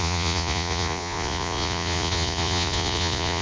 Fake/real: fake